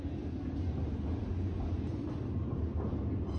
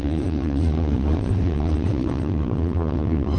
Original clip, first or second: first